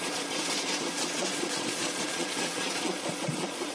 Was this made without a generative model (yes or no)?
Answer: no